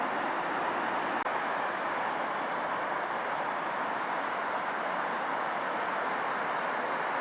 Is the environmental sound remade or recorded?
recorded